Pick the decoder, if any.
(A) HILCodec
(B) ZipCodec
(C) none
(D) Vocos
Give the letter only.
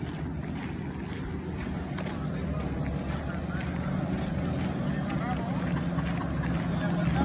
C